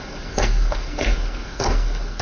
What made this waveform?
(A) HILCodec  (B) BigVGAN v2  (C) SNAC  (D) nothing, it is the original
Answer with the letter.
C